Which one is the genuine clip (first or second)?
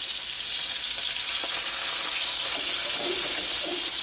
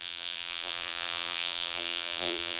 first